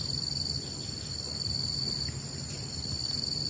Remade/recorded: recorded